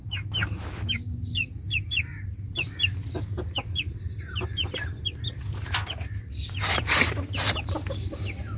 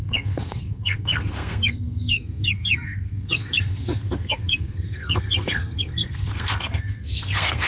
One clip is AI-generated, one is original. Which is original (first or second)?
first